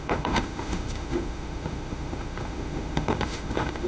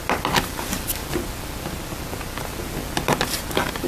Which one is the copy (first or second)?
first